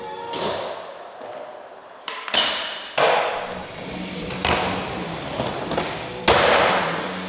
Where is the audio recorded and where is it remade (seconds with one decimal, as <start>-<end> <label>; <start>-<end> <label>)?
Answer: 0.0-7.3 recorded